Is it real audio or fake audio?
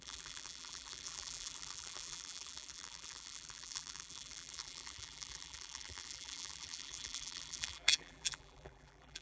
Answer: fake